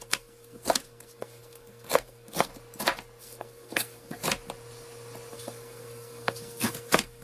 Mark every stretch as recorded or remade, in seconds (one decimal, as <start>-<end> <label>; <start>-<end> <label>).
0.0-2.5 remade; 2.5-3.2 recorded; 3.2-4.2 remade; 4.2-5.3 recorded; 5.3-7.2 remade